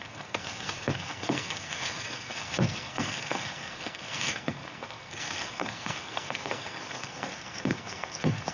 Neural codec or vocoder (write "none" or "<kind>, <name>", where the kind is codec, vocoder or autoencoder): codec, SNAC